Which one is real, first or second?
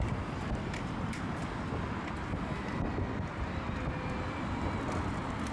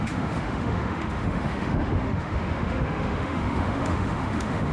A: first